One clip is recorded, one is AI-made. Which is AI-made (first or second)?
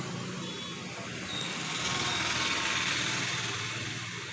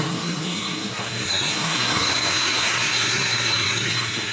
second